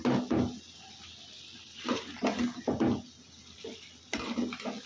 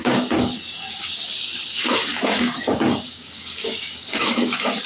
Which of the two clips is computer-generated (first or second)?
second